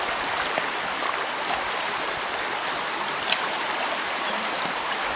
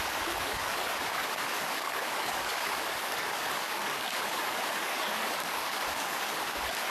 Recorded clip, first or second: first